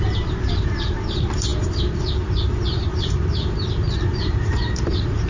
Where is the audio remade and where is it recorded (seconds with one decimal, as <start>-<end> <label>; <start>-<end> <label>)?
0.0-5.3 remade